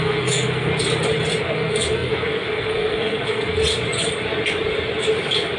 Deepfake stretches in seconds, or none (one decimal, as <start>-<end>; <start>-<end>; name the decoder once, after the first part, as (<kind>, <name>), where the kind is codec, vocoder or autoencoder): 0.0-0.7 (codec, SNAC); 1.4-3.6